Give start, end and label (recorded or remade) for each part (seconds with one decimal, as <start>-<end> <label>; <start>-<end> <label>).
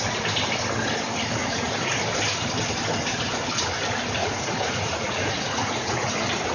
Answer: 0.0-1.4 recorded; 1.4-2.0 remade; 2.0-4.2 recorded; 4.2-6.1 remade; 6.1-6.5 recorded